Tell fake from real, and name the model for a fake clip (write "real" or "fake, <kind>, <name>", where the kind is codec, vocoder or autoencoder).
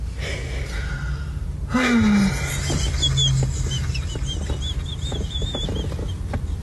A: real